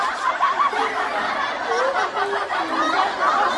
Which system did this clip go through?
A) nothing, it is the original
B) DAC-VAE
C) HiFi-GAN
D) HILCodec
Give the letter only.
A